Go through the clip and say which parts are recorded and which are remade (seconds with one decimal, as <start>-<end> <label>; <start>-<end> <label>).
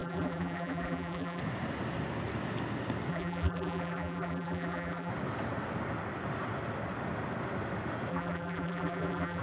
0.0-1.4 remade; 1.4-3.1 recorded; 3.1-5.1 remade; 5.1-8.1 recorded; 8.1-9.4 remade